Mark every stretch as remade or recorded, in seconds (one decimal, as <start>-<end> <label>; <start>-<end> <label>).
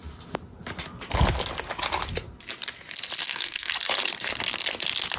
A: 0.0-3.2 recorded; 3.2-3.7 remade; 3.7-5.2 recorded